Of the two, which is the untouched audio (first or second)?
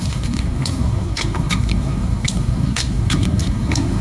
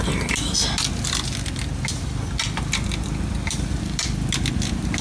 second